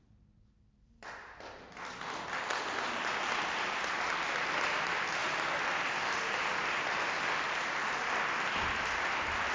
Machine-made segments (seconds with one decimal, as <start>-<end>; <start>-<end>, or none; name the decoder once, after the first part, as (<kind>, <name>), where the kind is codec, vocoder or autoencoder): none